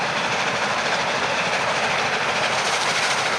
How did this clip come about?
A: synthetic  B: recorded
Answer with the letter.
A